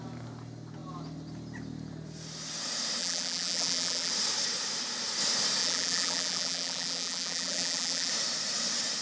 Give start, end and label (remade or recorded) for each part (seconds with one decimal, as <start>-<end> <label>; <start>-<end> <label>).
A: 0.0-3.0 recorded; 3.0-4.1 remade; 4.1-5.6 recorded; 5.6-8.1 remade; 8.1-9.0 recorded